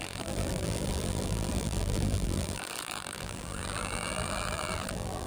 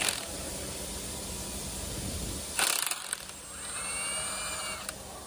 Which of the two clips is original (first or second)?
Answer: second